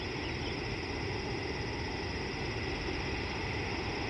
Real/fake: real